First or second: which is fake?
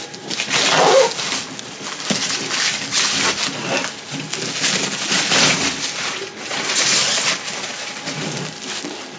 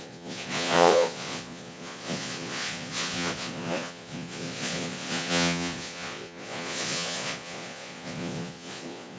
second